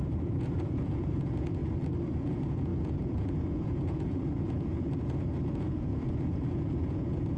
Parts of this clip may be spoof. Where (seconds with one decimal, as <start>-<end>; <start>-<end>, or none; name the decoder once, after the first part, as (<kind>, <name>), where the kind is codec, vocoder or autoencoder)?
0.0-1.6 (vocoder, Vocos); 2.1-7.4